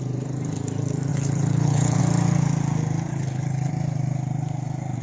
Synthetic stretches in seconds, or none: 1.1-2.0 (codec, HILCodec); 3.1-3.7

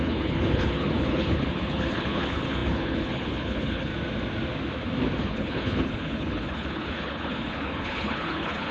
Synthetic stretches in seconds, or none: 0.0-3.9 (codec, HILCodec); 5.2-8.7

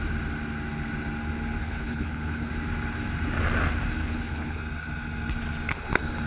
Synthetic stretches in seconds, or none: 1.6-2.5 (codec, HILCodec); 4.0-4.6

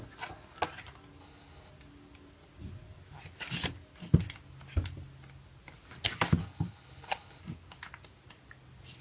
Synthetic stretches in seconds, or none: 1.2-1.7 (codec, HILCodec); 6.4-7.4

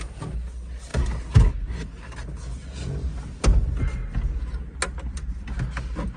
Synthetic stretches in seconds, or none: none

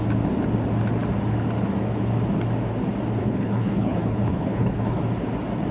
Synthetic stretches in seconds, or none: 3.2-5.0 (codec, HILCodec)